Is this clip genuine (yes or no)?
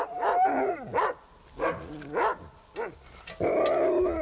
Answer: yes